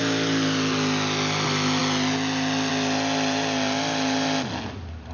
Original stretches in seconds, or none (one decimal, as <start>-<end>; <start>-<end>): 0.0-5.1